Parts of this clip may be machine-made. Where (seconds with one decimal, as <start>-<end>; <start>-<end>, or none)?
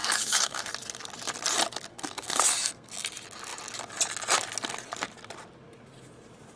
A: 0.0-0.7; 1.9-2.9